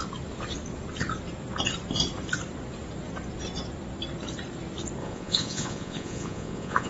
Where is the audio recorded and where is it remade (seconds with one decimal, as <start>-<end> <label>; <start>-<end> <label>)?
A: 0.0-5.0 recorded; 5.0-6.9 remade